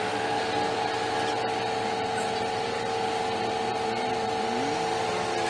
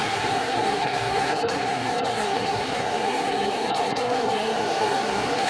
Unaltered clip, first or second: first